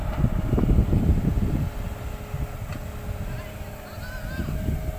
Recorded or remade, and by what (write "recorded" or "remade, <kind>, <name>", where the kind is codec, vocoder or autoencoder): recorded